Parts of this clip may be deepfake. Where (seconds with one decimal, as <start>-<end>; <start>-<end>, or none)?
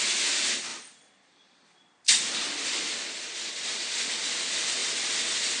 0.7-4.0; 4.8-5.6